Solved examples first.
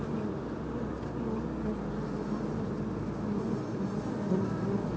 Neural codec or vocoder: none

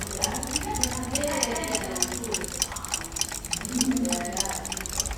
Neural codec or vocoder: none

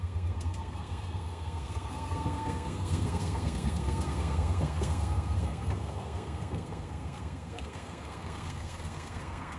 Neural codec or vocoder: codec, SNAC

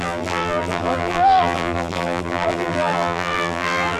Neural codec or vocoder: vocoder, BigVGAN v2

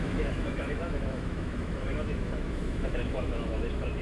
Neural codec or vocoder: autoencoder, DAC-VAE